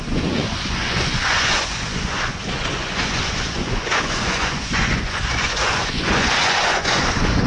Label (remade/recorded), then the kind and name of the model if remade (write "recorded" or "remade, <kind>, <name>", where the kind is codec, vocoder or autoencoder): remade, vocoder, Vocos